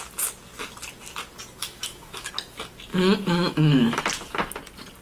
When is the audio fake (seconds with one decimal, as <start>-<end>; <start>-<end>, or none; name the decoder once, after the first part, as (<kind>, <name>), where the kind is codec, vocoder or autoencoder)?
1.6-2.3 (autoencoder, DAC-VAE); 2.9-4.0